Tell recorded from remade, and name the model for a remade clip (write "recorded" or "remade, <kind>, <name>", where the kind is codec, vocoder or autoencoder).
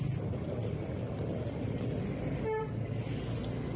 recorded